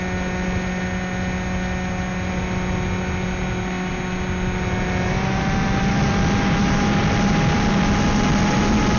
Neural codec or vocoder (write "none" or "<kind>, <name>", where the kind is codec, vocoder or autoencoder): none